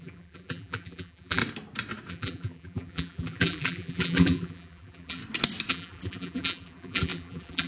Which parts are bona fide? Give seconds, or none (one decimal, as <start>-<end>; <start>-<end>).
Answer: 1.4-2.1; 5.2-5.7